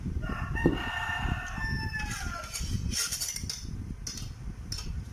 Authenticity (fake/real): real